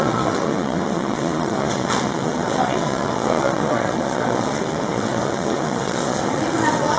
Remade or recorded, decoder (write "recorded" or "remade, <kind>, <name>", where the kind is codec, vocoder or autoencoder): remade, vocoder, WaveNeXt